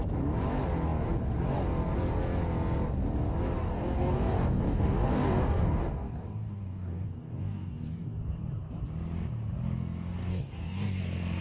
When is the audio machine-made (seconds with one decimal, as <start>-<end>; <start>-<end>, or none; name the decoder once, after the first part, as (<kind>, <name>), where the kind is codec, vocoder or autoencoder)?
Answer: 3.6-8.2 (codec, DAC); 10.3-11.0